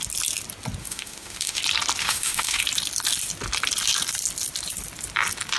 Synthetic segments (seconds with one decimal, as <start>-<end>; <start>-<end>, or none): 0.8-1.6; 2.0-2.6